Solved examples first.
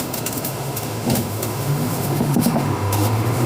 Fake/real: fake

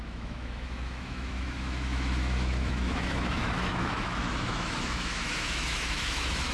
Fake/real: fake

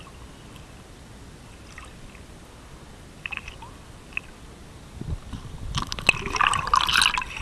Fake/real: real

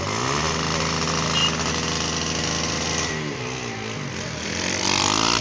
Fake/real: real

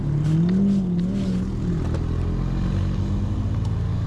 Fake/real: real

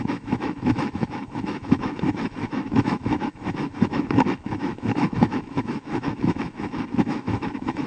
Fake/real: fake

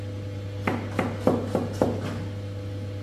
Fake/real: real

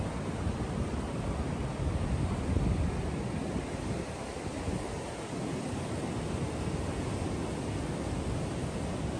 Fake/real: real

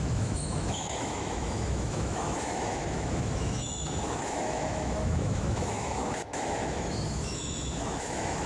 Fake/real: fake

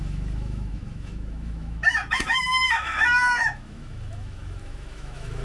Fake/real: fake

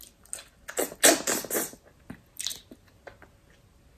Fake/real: real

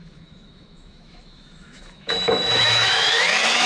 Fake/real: fake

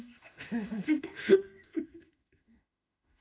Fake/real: fake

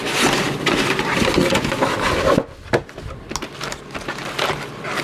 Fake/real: real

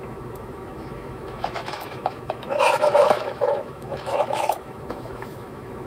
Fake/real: fake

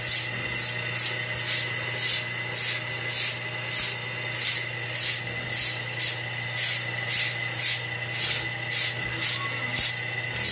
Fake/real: real